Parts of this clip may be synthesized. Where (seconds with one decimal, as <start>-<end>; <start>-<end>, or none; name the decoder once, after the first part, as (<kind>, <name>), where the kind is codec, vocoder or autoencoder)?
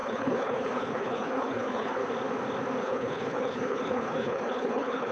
0.0-2.0 (codec, HILCodec); 2.8-5.1